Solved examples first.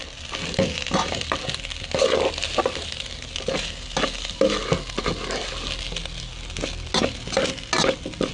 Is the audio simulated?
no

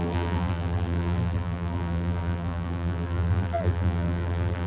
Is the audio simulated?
yes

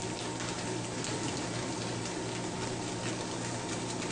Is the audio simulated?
no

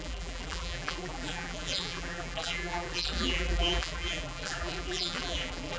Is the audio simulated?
yes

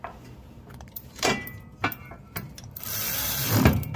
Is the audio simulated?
yes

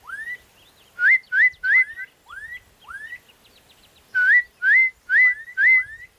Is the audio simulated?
no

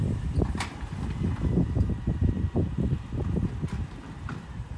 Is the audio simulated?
yes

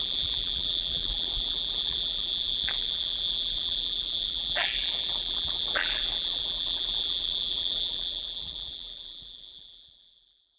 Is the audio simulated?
yes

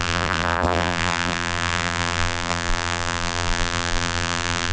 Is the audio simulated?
yes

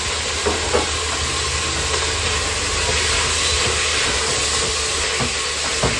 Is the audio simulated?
no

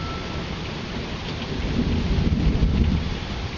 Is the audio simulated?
no